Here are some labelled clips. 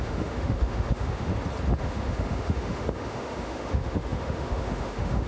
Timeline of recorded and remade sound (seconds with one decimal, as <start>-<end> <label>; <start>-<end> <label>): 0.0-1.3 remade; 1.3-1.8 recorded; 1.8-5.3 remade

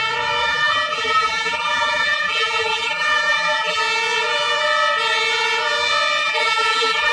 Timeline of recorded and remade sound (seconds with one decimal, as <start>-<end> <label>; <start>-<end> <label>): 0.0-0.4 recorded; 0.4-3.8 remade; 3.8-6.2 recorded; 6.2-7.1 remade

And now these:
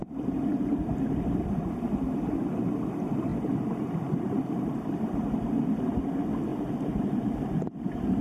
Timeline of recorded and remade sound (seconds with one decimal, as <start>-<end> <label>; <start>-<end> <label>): 0.0-1.7 remade; 1.7-3.3 recorded; 3.3-4.9 remade; 4.9-6.5 recorded; 6.5-7.5 remade; 7.5-8.2 recorded

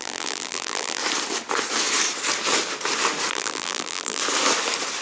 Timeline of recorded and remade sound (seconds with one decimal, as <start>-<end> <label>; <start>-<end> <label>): 0.0-1.0 remade; 1.0-3.3 recorded; 3.3-4.2 remade; 4.2-5.0 recorded